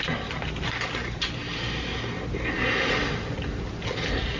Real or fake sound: real